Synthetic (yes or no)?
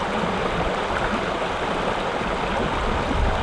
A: no